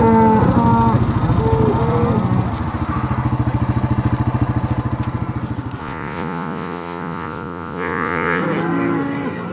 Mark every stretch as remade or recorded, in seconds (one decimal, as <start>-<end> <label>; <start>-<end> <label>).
0.0-5.8 recorded; 5.8-8.4 remade; 8.4-9.5 recorded